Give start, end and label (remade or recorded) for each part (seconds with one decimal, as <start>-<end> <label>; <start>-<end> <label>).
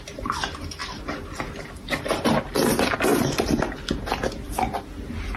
0.0-3.1 recorded; 3.1-3.6 remade; 3.6-5.4 recorded